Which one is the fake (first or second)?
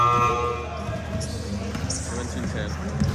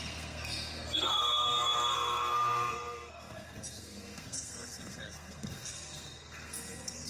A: second